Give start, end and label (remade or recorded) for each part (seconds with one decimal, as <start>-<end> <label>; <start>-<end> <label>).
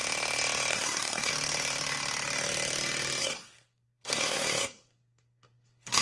0.0-0.7 recorded; 0.7-1.3 remade; 1.3-3.2 recorded; 3.2-6.0 remade